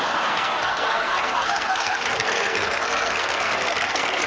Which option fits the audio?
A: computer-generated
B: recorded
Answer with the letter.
A